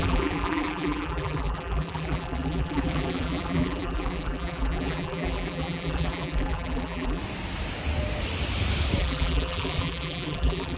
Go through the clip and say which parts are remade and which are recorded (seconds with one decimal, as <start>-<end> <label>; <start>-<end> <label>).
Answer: 0.0-7.2 remade; 7.2-9.0 recorded; 9.0-10.8 remade